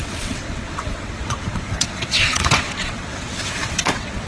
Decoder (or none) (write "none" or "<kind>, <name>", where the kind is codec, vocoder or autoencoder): vocoder, WaveNeXt